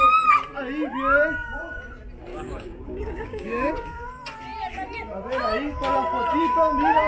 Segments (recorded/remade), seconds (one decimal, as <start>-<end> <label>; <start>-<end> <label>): 0.0-2.3 recorded; 2.3-3.7 remade; 3.7-7.1 recorded